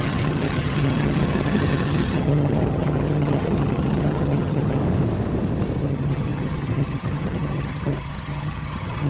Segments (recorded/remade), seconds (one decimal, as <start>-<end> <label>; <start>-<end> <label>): 0.0-4.8 remade; 4.8-5.8 recorded; 5.8-9.1 remade